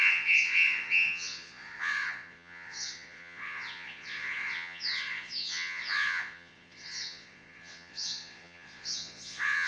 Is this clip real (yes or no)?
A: no